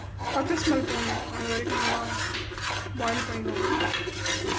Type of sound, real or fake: real